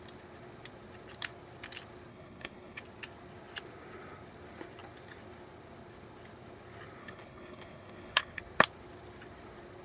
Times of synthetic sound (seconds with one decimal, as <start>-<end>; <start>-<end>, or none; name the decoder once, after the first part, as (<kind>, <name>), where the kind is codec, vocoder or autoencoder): 2.1-2.8 (codec, HILCodec); 7.0-8.4